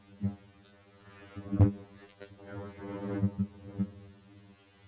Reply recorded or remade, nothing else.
recorded